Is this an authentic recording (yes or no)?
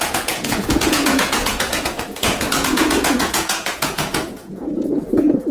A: no